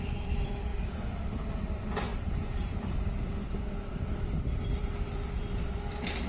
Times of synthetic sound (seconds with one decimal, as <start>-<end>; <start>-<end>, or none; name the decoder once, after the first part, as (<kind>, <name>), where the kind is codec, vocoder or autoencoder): 0.0-6.3 (vocoder, BigVGAN v2)